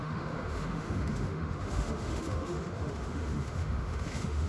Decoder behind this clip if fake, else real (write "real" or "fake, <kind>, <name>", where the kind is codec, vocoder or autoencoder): fake, autoencoder, DAC-VAE